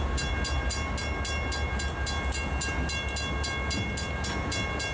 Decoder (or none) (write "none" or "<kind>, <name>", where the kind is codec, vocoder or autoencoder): none